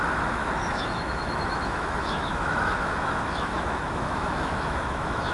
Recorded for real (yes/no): no